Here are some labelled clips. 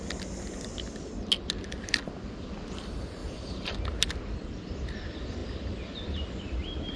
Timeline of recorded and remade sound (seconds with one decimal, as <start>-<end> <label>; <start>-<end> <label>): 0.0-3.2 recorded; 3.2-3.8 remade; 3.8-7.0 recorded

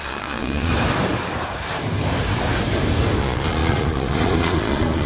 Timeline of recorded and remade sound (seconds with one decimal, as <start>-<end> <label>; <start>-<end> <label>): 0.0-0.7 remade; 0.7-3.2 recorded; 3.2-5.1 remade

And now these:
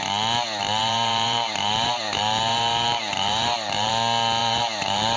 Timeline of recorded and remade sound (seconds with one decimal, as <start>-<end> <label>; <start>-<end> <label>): 0.0-0.8 recorded; 0.8-3.9 remade; 3.9-4.4 recorded; 4.4-5.2 remade